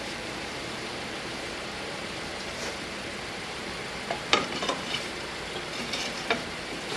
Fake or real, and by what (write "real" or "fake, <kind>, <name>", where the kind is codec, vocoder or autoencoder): fake, vocoder, BigVGAN v2